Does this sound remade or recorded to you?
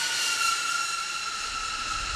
recorded